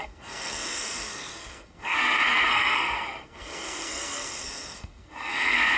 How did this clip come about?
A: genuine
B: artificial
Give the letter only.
B